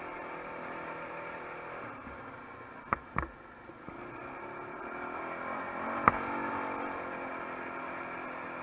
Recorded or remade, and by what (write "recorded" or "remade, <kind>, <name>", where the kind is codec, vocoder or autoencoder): recorded